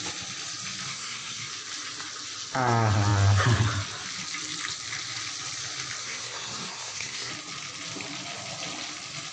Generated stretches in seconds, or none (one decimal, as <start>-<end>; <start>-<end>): 0.9-1.5; 6.0-7.3